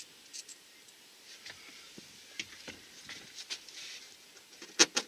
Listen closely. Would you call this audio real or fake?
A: real